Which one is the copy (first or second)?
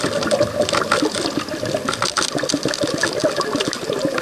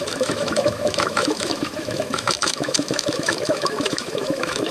second